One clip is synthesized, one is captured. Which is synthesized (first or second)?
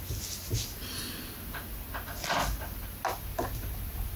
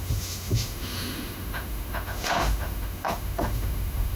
second